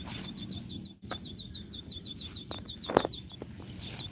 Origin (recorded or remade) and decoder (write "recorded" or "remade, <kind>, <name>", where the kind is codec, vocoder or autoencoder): recorded